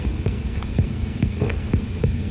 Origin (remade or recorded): remade